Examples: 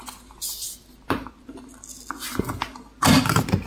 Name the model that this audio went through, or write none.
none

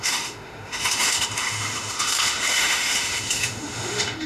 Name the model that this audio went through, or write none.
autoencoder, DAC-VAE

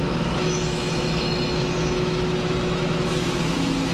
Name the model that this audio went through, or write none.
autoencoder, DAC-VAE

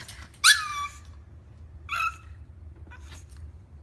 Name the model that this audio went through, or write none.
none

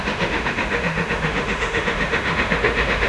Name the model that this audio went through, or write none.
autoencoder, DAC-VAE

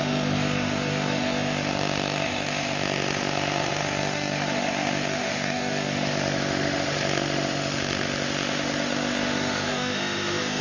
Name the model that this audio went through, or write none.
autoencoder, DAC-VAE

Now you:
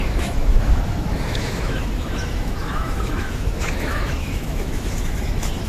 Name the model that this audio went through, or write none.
autoencoder, DAC-VAE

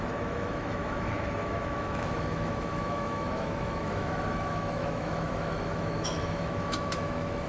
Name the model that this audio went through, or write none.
autoencoder, DAC-VAE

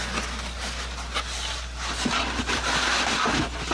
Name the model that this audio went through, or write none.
none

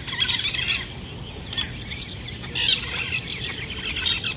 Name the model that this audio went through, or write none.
none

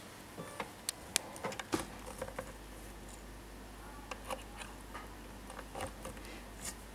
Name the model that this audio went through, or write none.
none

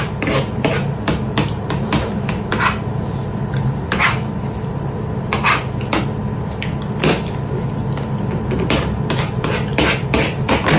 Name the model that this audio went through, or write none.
none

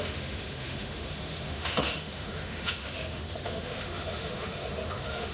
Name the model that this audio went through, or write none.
autoencoder, DAC-VAE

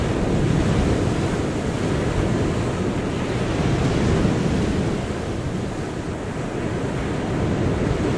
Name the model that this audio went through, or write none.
none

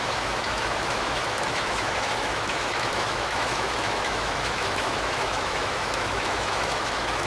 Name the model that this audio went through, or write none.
autoencoder, DAC-VAE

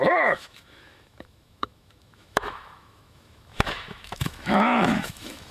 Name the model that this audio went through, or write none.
autoencoder, DAC-VAE